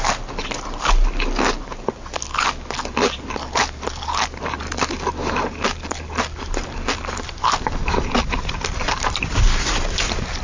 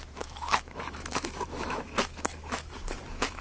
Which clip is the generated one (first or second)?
second